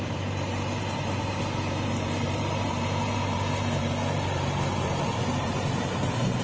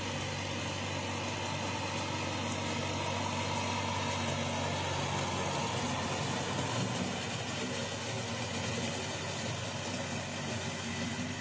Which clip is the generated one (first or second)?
first